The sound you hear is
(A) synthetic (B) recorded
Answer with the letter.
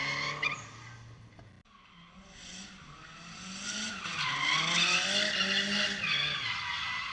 B